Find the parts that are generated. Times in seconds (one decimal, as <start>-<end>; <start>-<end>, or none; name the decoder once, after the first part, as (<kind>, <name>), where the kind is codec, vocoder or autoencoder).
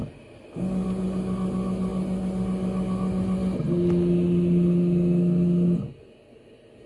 none